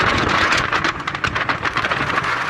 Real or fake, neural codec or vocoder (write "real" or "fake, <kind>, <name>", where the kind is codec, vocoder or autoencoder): fake, vocoder, Vocos